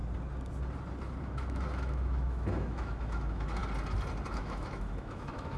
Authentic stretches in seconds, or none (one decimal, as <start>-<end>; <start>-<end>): 0.0-1.2; 3.6-4.3

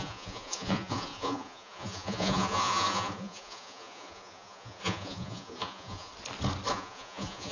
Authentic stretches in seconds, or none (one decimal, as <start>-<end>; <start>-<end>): 6.1-6.7